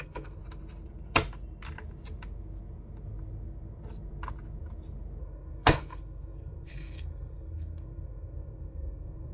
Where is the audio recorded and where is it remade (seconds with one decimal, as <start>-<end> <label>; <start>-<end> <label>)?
0.0-0.4 remade; 0.4-5.2 recorded; 5.2-9.3 remade